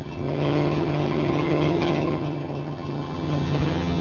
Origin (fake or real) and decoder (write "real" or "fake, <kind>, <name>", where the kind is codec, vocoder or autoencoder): fake, vocoder, HiFi-GAN